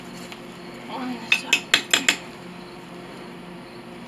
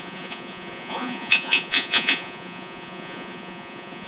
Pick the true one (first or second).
first